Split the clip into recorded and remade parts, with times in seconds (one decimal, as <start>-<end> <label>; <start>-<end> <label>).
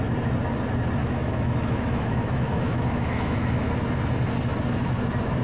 0.0-1.0 recorded; 1.0-3.7 remade; 3.7-5.4 recorded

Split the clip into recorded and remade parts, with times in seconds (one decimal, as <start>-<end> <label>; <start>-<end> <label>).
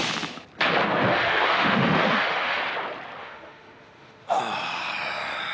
0.0-1.1 recorded; 1.1-2.6 remade; 2.6-3.2 recorded; 3.2-4.4 remade; 4.4-5.5 recorded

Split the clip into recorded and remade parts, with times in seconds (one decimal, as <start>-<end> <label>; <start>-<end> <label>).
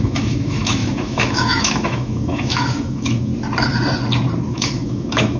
0.0-3.3 remade; 3.3-4.5 recorded; 4.5-5.4 remade